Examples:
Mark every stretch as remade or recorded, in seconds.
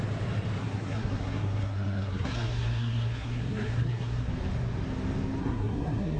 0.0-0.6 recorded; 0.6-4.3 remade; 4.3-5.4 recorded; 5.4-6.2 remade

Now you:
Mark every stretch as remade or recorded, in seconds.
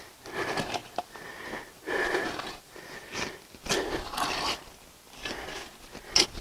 0.0-6.4 recorded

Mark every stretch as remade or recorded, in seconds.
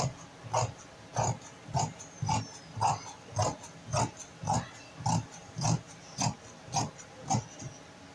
0.0-5.4 recorded; 5.4-6.2 remade; 6.2-8.1 recorded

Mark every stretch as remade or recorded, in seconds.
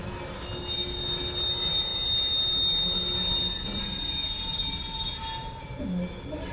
0.0-6.5 recorded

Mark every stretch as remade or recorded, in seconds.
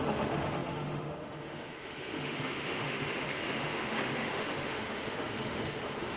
0.0-6.2 remade